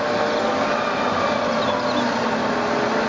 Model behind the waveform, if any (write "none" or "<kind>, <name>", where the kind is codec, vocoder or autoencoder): none